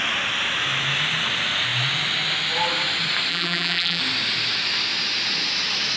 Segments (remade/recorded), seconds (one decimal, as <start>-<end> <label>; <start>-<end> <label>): 0.0-3.3 recorded; 3.3-4.0 remade; 4.0-6.0 recorded